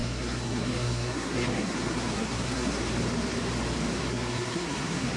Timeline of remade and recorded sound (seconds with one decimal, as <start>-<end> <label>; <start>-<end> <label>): 0.0-2.8 remade; 2.8-4.0 recorded; 4.0-5.2 remade